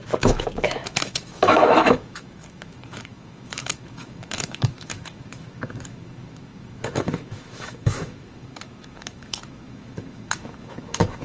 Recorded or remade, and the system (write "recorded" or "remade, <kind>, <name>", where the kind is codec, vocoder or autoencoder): remade, autoencoder, DAC-VAE